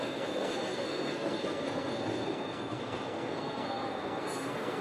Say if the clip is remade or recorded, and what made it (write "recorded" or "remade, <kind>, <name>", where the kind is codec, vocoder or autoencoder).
remade, codec, SNAC